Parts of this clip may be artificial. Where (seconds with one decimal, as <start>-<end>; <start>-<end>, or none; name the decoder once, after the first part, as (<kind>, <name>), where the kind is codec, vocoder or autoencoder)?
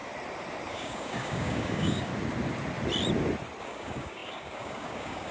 0.7-2.1 (codec, DAC); 3.6-5.3